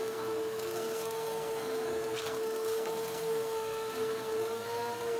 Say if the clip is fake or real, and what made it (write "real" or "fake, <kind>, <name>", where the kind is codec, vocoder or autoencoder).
fake, codec, SNAC